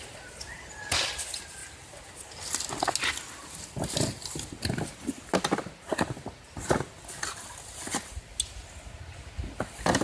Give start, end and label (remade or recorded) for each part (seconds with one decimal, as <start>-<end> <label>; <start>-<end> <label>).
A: 0.0-10.0 recorded